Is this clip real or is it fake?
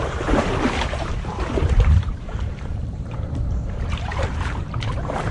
fake